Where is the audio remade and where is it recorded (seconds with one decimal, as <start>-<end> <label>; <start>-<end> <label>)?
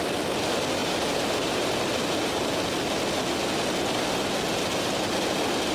0.0-5.7 recorded